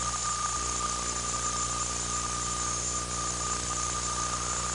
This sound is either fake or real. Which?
real